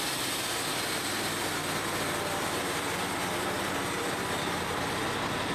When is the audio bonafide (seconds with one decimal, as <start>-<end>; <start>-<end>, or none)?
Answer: 0.0-5.5